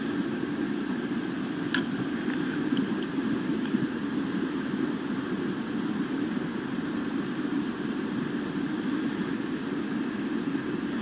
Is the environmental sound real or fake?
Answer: real